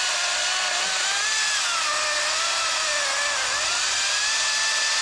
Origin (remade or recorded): recorded